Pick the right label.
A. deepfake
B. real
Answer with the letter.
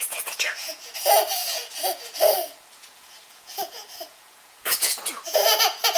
A